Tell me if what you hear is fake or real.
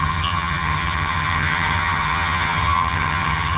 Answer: fake